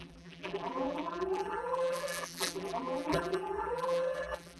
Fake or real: fake